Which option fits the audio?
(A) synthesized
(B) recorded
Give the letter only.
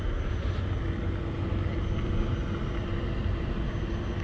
B